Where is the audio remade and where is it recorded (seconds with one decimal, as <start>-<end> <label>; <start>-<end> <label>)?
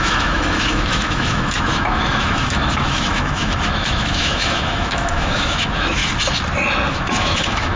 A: 0.0-6.0 remade; 6.0-6.9 recorded; 6.9-7.8 remade